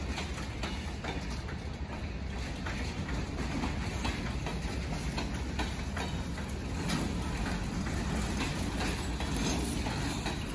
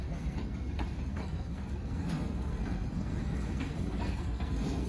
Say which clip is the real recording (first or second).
first